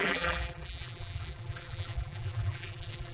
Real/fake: fake